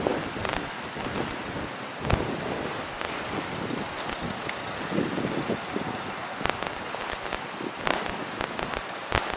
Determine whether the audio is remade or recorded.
recorded